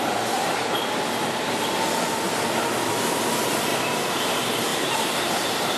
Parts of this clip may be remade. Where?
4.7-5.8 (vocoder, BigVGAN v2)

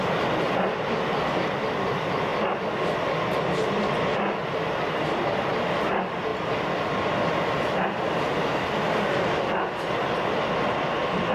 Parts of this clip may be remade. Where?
6.3-8.7 (vocoder, BigVGAN v2)

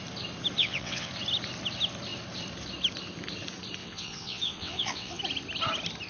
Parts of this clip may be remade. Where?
0.6-1.1 (vocoder, WaveNeXt); 3.8-5.2

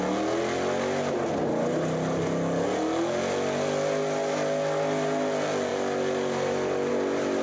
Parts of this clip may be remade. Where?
none

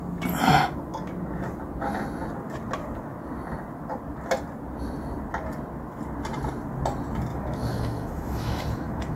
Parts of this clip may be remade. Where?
7.3-9.2 (autoencoder, DAC-VAE)

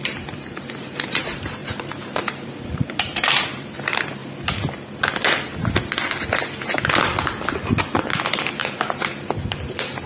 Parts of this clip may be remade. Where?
0.0-4.2 (vocoder, BigVGAN v2); 7.8-10.1

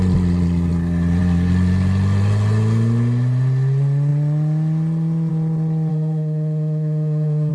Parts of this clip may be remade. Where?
5.9-7.5 (autoencoder, DAC-VAE)